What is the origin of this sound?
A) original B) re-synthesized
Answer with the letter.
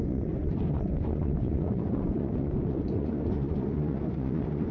B